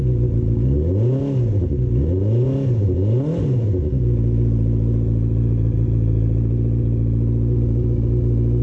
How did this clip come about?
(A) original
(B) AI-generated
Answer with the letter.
A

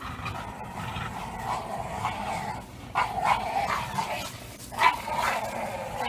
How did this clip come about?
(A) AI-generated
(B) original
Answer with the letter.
B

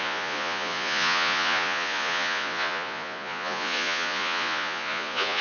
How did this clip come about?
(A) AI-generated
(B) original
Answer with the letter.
A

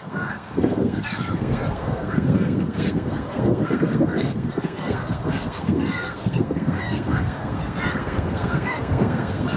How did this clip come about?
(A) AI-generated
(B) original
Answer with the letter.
A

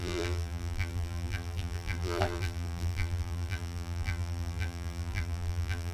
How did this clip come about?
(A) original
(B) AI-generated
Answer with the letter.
B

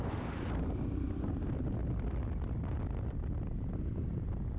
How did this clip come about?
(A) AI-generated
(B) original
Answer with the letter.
B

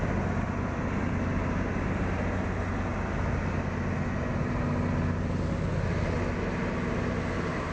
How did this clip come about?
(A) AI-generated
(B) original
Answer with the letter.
B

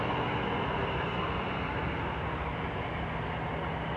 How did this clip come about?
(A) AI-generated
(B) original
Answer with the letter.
B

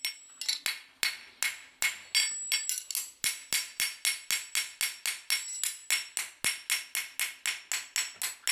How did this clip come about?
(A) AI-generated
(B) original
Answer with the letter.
B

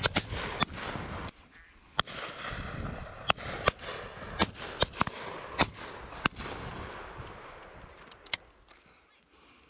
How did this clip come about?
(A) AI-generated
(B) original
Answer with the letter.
B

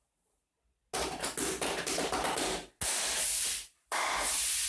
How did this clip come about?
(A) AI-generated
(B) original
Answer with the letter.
B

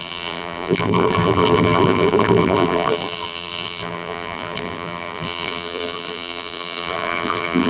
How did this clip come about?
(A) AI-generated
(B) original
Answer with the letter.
A